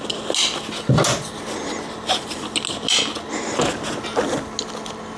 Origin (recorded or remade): recorded